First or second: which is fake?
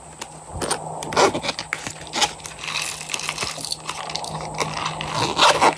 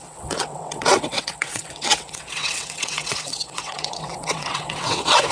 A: second